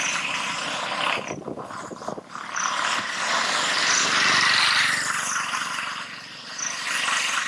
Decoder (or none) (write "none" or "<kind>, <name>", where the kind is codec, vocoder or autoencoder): none